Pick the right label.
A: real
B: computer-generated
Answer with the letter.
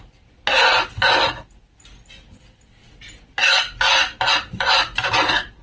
A